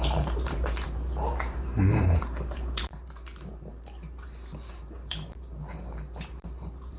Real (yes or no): no